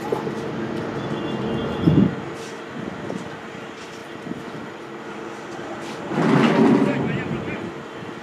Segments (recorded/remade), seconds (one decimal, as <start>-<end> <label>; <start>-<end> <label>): 0.0-8.2 recorded